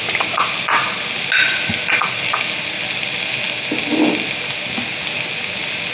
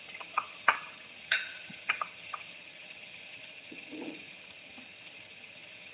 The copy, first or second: second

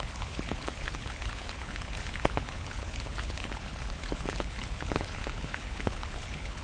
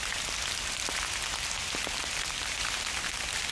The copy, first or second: first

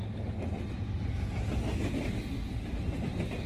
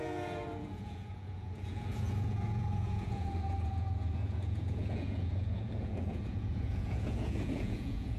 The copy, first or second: second